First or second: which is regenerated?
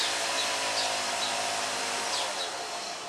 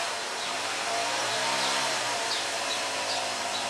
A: second